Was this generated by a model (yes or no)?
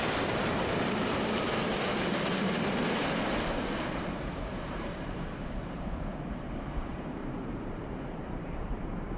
yes